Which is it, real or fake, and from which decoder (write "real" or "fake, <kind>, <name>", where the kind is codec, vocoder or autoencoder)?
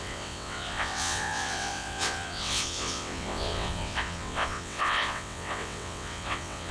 fake, vocoder, WaveNeXt